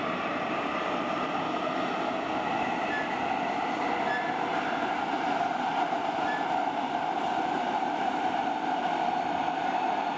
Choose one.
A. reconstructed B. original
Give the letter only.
A